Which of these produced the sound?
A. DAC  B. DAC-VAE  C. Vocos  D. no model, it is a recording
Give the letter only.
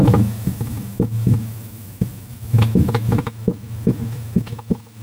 B